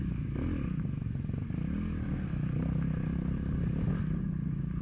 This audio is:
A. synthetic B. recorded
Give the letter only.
B